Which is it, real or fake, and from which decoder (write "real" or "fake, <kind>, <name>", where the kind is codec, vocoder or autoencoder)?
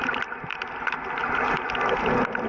real